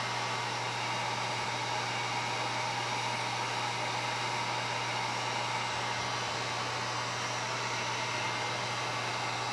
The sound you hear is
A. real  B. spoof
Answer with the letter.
A